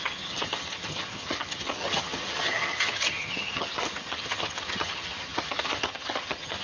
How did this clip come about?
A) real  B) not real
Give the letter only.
B